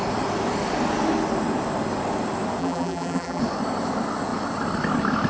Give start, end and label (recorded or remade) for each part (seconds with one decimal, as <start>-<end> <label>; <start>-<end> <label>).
0.0-2.6 recorded; 2.6-3.4 remade; 3.4-5.3 recorded